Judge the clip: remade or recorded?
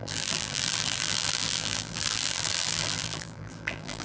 remade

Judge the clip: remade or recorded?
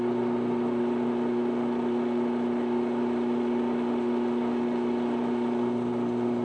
recorded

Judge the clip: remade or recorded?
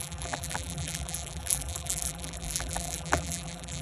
remade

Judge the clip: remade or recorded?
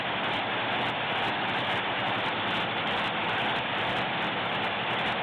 remade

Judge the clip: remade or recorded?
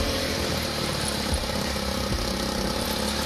remade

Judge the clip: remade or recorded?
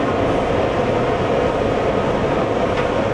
recorded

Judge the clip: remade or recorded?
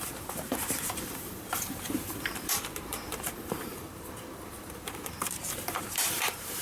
remade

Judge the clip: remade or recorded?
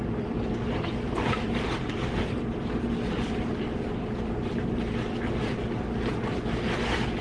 recorded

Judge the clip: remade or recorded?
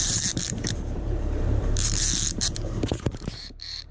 remade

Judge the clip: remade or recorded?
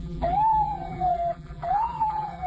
remade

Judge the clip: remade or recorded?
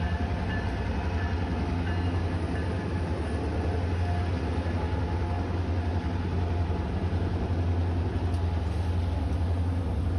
recorded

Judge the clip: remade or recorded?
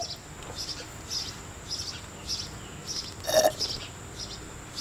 recorded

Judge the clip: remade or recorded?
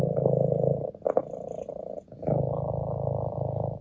recorded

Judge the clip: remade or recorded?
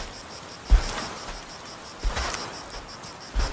remade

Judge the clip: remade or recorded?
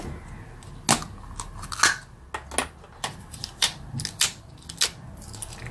recorded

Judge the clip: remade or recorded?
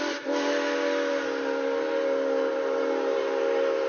recorded